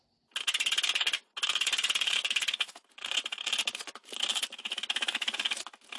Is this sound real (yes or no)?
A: yes